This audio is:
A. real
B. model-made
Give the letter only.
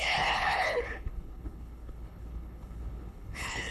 B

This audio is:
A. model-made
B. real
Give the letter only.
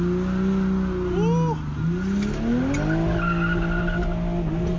B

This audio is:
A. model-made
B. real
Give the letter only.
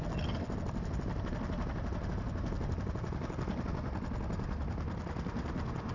B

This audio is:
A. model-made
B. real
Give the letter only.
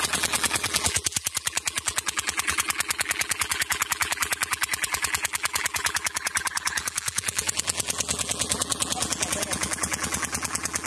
A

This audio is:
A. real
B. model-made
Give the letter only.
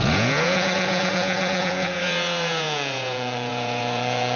B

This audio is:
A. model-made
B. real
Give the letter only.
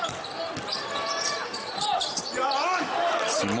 B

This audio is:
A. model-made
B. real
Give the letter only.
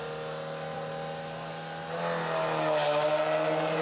B